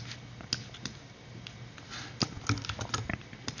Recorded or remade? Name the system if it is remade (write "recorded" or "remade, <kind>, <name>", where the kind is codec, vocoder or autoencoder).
recorded